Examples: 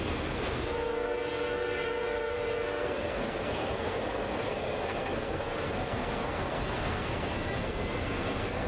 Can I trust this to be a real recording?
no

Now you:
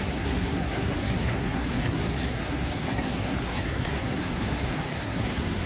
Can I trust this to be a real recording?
no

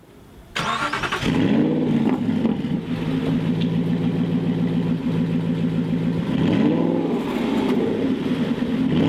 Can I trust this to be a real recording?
yes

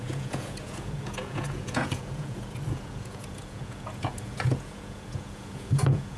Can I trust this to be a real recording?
no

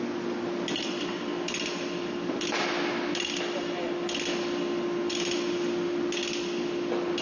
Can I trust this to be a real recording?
yes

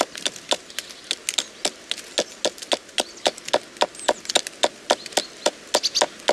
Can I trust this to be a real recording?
yes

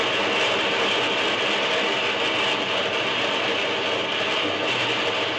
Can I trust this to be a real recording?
yes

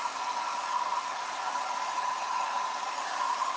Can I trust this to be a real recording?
no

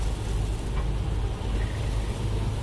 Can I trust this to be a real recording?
yes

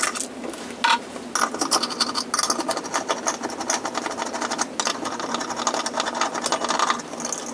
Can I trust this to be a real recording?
yes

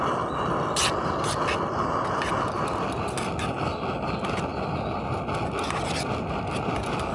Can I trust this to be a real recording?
yes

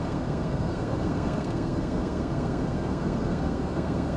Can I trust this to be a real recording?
no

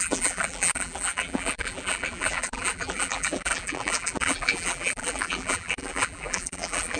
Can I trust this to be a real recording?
no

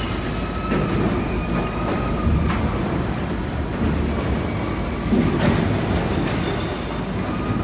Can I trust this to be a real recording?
yes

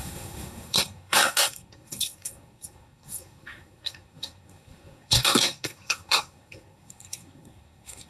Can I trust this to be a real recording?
no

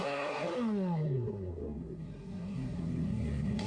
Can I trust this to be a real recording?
no